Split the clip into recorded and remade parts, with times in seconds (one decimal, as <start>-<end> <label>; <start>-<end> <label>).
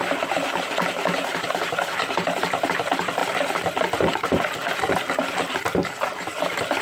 0.0-6.8 recorded